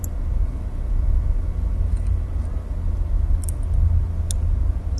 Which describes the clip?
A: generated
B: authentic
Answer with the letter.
B